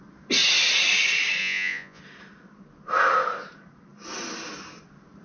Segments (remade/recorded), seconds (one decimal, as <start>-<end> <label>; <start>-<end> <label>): 0.0-1.4 recorded; 1.4-2.0 remade; 2.0-5.2 recorded